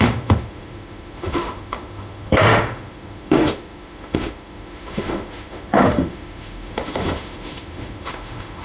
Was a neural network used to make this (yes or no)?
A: yes